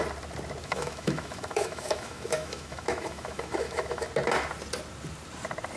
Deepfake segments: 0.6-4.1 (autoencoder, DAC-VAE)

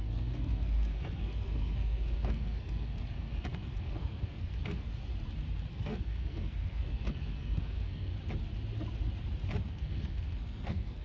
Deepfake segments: 0.0-4.9 (codec, SNAC); 5.7-8.1; 9.6-11.0

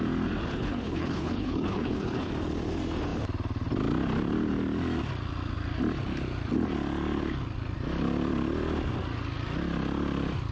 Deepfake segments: 0.5-2.3 (codec, HILCodec)

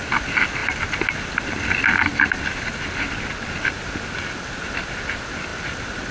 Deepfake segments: none

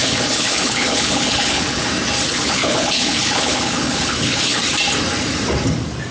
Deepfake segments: 0.0-1.9 (codec, HILCodec); 2.3-4.6

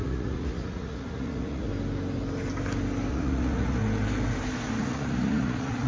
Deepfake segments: 0.0-1.7 (vocoder, Vocos); 3.1-3.8; 4.8-5.9

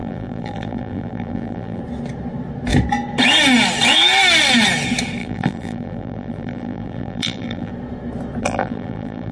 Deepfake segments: 0.0-1.8 (vocoder, BigVGAN v2); 5.2-7.7; 8.4-9.3